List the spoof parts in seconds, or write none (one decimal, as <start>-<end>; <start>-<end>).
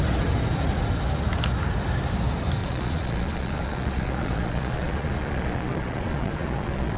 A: 2.6-7.0